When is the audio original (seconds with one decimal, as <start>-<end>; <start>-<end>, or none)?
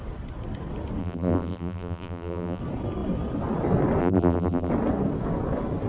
0.0-1.0; 2.6-4.0; 4.7-5.9